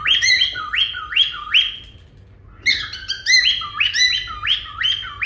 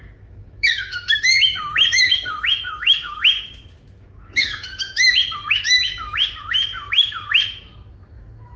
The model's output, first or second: second